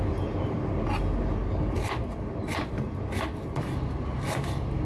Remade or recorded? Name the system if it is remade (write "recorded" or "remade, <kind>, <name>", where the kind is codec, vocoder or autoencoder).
recorded